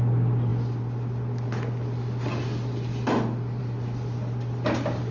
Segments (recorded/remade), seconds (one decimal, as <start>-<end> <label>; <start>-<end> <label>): 0.0-5.1 recorded